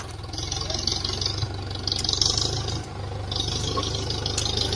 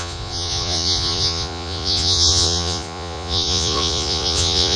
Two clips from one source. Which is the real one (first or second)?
first